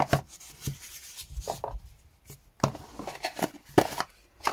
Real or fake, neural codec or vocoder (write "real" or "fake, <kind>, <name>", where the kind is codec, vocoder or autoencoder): real